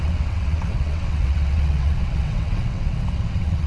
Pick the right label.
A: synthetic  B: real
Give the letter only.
A